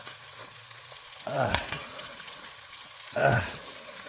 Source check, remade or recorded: remade